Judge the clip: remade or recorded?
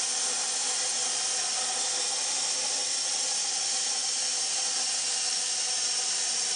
recorded